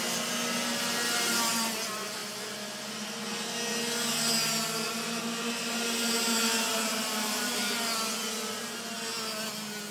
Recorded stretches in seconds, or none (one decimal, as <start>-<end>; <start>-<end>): 0.0-9.9